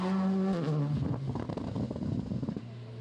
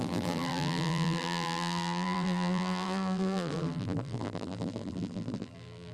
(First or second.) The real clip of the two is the first